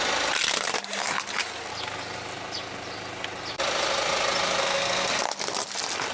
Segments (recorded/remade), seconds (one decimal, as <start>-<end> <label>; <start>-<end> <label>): 0.0-4.6 recorded; 4.6-5.1 remade; 5.1-6.1 recorded